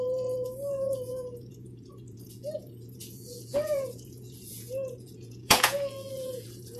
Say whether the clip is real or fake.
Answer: fake